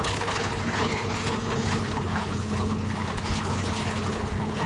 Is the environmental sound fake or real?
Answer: fake